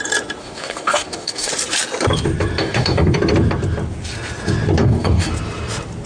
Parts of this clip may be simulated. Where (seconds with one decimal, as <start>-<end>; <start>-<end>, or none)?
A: 0.4-1.5; 2.6-3.1; 4.8-5.3

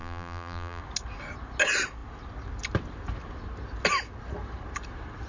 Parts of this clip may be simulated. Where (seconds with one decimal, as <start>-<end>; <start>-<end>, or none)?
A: 0.0-0.8